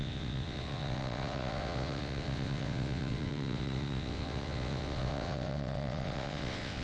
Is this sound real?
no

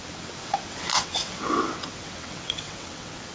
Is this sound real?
no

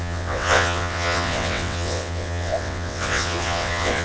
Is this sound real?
no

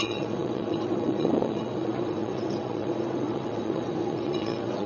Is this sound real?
no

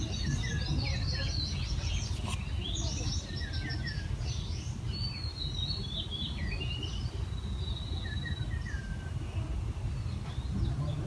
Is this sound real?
yes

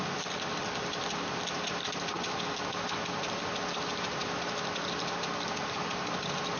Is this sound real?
yes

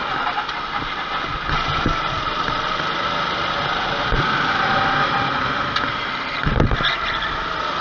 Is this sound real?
yes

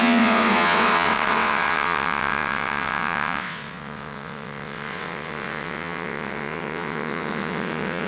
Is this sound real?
no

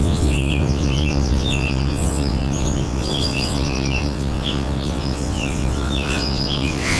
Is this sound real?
no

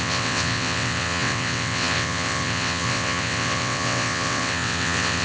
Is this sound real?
no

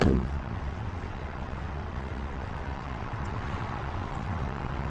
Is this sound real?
no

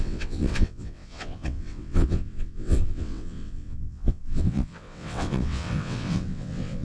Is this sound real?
no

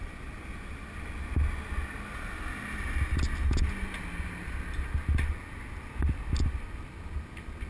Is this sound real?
yes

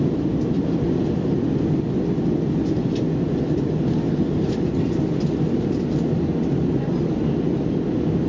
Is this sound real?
yes